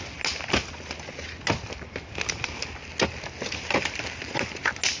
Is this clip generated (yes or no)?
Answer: no